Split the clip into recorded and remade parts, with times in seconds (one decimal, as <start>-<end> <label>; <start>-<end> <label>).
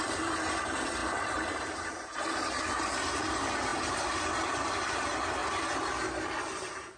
0.0-5.4 remade; 5.4-6.0 recorded; 6.0-7.0 remade